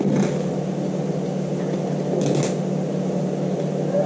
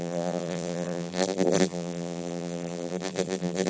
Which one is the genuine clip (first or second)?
first